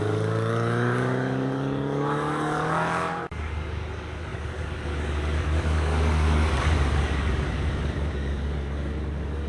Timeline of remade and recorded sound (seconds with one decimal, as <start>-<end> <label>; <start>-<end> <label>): 0.0-9.5 remade